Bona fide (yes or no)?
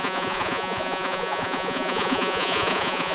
no